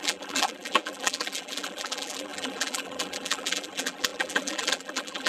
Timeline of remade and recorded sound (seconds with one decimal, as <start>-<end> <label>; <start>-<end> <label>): 0.0-5.3 remade